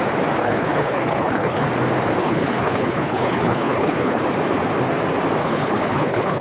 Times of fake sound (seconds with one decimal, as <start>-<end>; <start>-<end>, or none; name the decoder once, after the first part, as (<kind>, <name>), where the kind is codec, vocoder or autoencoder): 0.4-1.7 (codec, HILCodec); 2.2-4.2; 5.4-6.4